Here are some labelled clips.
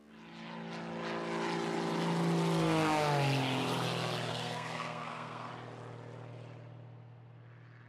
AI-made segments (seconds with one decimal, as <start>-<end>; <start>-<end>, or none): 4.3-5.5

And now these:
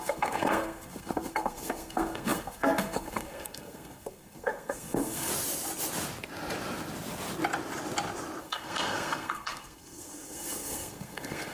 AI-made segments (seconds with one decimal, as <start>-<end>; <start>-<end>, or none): 0.0-5.3; 8.4-11.5

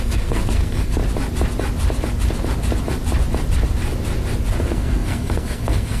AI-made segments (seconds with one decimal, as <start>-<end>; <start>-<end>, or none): 0.0-1.0; 4.6-6.0